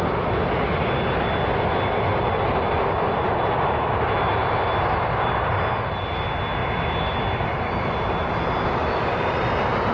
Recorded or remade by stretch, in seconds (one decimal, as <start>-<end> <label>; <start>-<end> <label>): 0.0-9.9 recorded